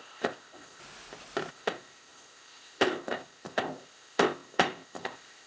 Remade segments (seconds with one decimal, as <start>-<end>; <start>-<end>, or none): 0.0-0.8; 1.5-5.5